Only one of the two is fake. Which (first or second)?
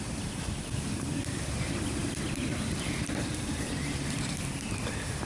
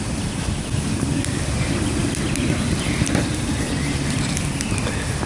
first